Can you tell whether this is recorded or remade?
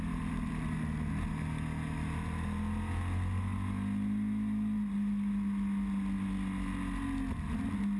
recorded